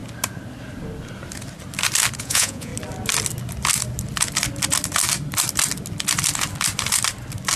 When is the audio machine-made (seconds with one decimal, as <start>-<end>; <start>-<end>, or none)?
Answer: 2.2-2.7